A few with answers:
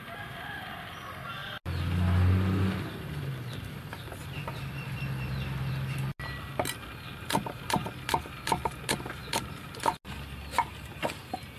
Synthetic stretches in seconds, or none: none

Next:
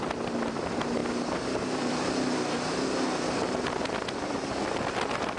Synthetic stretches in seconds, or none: none

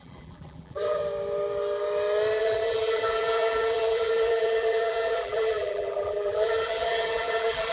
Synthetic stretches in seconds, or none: 0.0-1.0 (vocoder, BigVGAN v2); 2.4-7.7

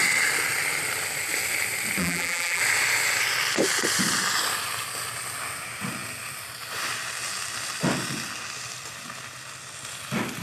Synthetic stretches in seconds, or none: 2.0-2.6 (vocoder, BigVGAN v2)

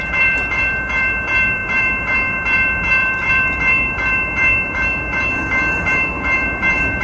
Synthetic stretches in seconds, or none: 0.0-7.0 (vocoder, BigVGAN v2)

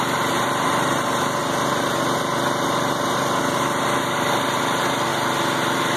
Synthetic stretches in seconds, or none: 0.0-1.4 (vocoder, BigVGAN v2); 4.0-5.1

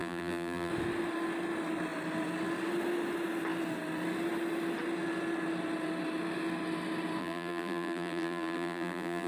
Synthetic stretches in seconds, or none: 0.0-0.7 (vocoder, BigVGAN v2); 7.2-9.3

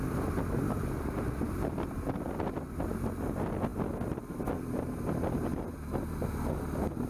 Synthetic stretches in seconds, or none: none